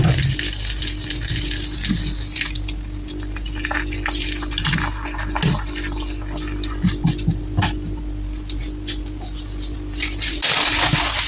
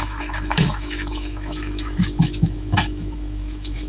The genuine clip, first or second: first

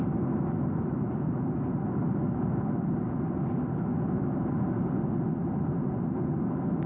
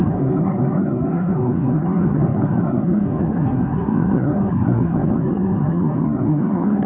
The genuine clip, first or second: first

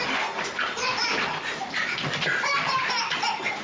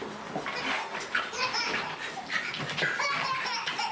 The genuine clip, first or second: second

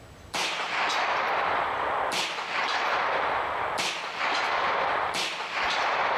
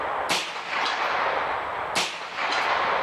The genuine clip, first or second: second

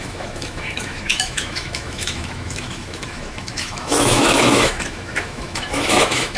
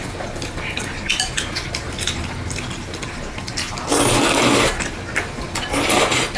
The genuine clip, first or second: second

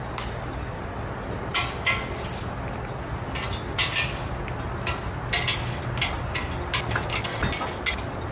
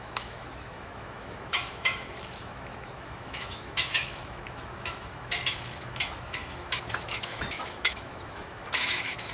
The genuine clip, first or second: first